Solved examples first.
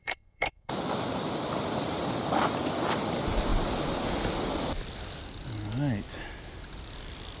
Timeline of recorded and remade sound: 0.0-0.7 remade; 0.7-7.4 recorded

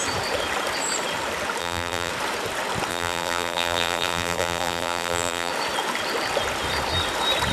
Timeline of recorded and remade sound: 0.0-1.6 recorded; 1.6-2.1 remade; 2.1-2.9 recorded; 2.9-5.5 remade; 5.5-7.5 recorded

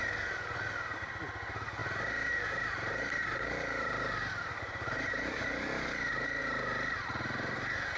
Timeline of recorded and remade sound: 0.0-1.8 recorded; 1.8-6.4 remade; 6.4-8.0 recorded

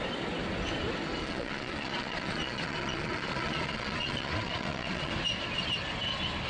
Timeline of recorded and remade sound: 0.0-1.2 recorded; 1.2-5.1 remade; 5.1-6.5 recorded

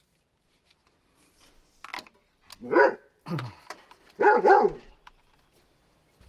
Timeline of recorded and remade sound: 0.0-6.3 recorded

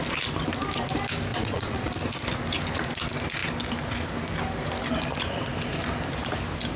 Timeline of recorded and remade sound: 0.0-1.3 recorded; 1.3-1.9 remade; 1.9-6.8 recorded

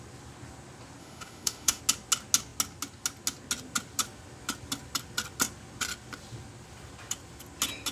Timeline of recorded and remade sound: 0.0-1.0 recorded; 1.0-1.8 remade; 1.8-7.9 recorded

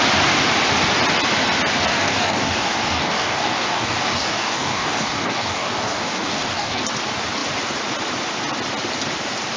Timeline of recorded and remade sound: 0.0-1.9 recorded; 1.9-6.8 remade; 6.8-9.6 recorded